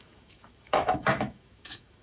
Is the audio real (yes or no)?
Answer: no